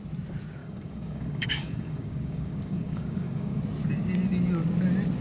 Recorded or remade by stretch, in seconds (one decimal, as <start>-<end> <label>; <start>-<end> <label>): 0.0-0.6 recorded; 0.6-3.6 remade; 3.6-5.2 recorded